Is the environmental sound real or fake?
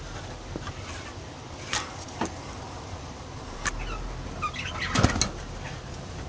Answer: real